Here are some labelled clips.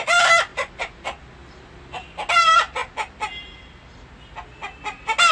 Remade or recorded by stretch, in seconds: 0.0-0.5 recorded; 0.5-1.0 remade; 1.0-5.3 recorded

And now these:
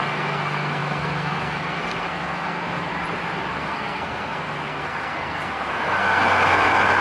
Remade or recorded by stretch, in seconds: 0.0-2.9 remade; 2.9-3.5 recorded; 3.5-7.0 remade